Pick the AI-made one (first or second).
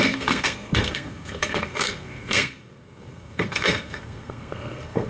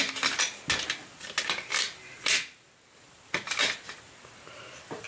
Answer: first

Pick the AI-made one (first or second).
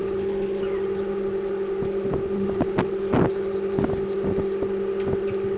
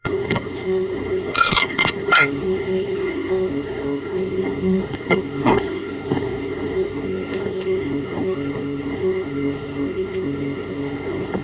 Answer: second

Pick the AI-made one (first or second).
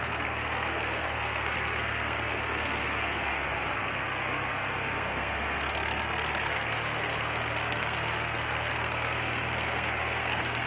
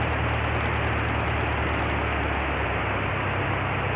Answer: first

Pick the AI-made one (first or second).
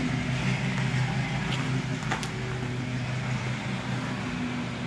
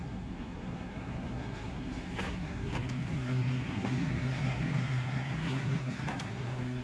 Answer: second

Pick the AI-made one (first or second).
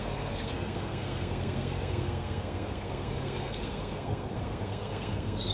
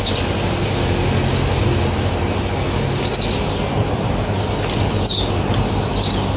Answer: first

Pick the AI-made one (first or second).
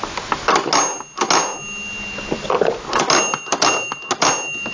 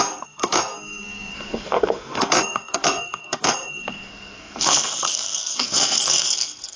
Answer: second